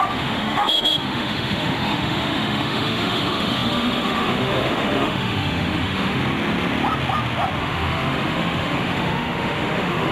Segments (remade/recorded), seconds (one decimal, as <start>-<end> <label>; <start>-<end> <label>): 0.0-6.2 remade; 6.2-7.6 recorded; 7.6-10.1 remade